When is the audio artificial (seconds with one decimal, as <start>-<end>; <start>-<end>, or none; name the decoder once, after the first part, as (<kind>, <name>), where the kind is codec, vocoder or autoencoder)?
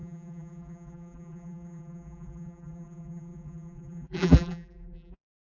0.0-5.5 (vocoder, BigVGAN v2)